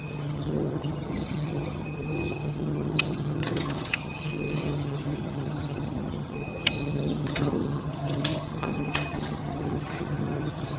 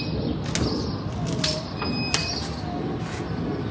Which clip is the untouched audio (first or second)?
second